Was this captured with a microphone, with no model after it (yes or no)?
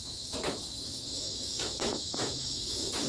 no